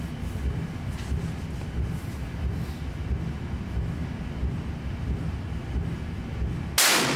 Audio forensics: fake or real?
real